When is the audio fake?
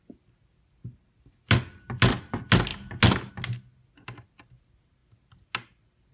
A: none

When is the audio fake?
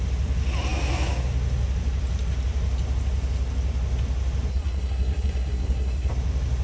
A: 4.5-6.1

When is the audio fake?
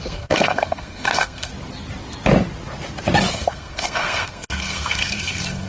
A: 0.0-1.5; 3.3-5.7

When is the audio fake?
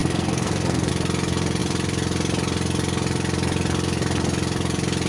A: 0.0-0.9